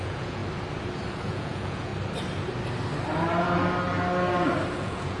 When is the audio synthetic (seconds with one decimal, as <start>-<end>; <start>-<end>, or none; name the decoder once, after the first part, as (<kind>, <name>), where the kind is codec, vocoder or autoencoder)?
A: 0.0-0.4 (vocoder, Vocos); 1.1-1.9; 4.8-5.2